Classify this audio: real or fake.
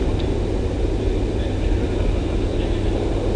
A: real